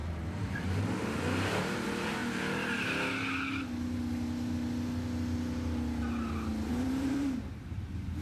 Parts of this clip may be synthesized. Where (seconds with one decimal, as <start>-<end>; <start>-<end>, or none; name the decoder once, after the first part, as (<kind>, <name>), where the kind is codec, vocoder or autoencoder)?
1.4-2.2 (vocoder, BigVGAN v2); 6.7-8.2